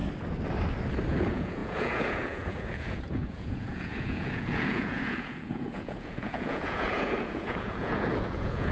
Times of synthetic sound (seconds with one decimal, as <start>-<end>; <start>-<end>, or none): 1.1-8.7